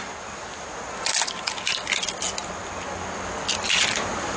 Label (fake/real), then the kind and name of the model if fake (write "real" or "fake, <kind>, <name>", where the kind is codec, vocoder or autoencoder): real